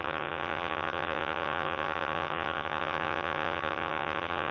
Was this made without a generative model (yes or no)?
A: no